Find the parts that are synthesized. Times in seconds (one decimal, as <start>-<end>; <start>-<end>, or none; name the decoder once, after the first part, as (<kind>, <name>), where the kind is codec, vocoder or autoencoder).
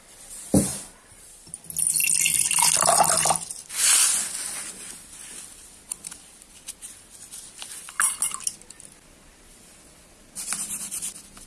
0.7-1.3 (vocoder, BigVGAN v2)